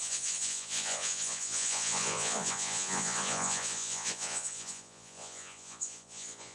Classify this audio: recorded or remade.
remade